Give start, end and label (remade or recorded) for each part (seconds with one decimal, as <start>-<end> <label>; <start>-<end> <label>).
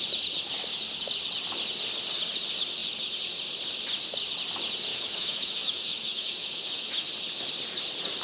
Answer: 0.0-4.9 recorded; 4.9-7.1 remade; 7.1-8.2 recorded